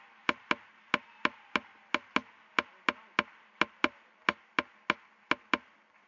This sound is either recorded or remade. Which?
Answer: recorded